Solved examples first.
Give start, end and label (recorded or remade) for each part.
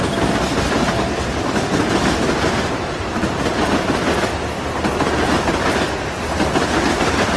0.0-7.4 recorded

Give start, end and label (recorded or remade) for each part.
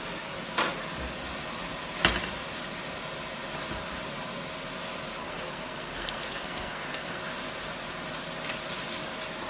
0.0-5.2 recorded; 5.2-7.2 remade; 7.2-9.5 recorded